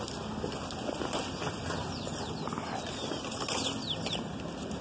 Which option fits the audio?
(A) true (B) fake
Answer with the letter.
A